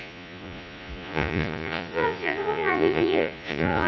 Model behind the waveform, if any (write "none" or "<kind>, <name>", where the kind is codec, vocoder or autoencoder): vocoder, Vocos